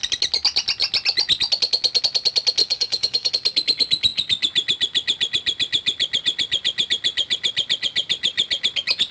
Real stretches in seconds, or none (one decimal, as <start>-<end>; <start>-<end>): 0.0-2.6; 3.3-9.1